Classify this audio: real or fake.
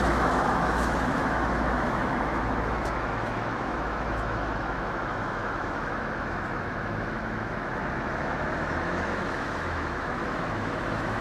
fake